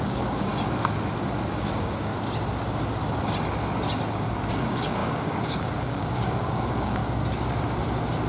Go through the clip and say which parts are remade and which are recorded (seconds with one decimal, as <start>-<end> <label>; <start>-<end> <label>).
0.0-0.5 remade; 0.5-1.5 recorded; 1.5-2.1 remade; 2.1-4.3 recorded; 4.3-7.0 remade; 7.0-8.3 recorded